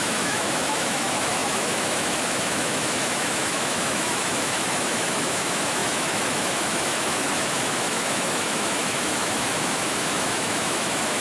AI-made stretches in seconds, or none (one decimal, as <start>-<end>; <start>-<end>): 0.0-11.2